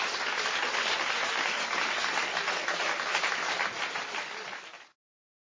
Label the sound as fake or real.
real